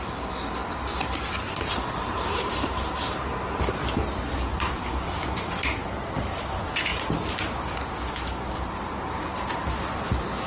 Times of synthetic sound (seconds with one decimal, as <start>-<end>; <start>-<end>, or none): 0.0-10.5